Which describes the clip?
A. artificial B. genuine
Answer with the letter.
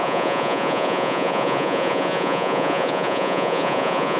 A